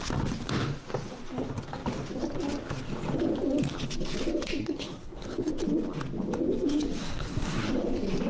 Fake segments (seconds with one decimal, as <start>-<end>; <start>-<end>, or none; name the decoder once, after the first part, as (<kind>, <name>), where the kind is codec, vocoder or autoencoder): 4.6-5.5 (codec, SNAC); 7.0-7.7